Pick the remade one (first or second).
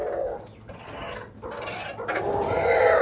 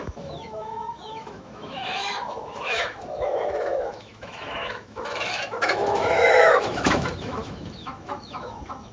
second